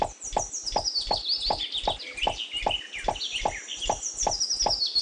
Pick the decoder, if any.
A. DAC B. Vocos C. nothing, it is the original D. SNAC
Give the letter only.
C